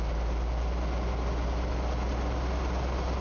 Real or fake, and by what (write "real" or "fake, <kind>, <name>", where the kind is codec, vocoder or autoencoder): real